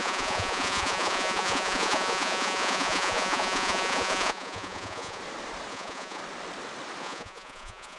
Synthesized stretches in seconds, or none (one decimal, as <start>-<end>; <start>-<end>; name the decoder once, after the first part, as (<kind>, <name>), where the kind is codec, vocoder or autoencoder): 0.0-5.2 (vocoder, Vocos); 5.7-6.2; 7.0-8.0